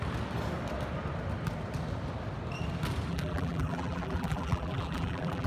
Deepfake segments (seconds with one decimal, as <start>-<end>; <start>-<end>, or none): 3.1-5.5